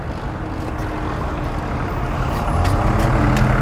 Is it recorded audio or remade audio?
recorded